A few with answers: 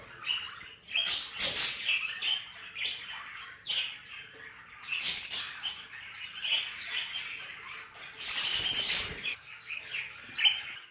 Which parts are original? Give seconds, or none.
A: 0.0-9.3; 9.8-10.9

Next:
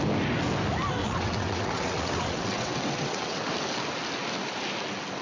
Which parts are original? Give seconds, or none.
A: 0.0-1.0; 3.4-5.2

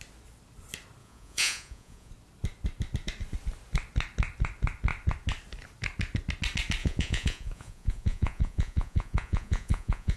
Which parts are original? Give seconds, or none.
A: 0.0-1.0; 2.1-6.8

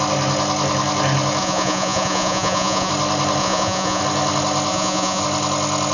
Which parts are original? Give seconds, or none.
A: 0.0-1.4; 2.9-3.4; 4.0-4.7; 5.2-5.9

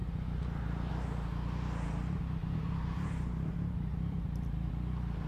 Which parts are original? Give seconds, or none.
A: 0.9-2.4; 4.7-5.3

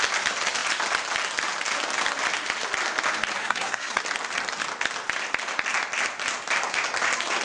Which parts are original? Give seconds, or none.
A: 0.0-3.4; 4.0-7.4

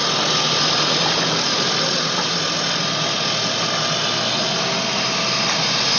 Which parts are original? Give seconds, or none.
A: 0.0-6.0

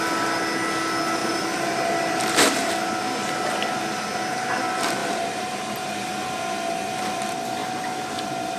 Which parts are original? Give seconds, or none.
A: 0.0-1.2; 2.7-5.0; 6.1-8.6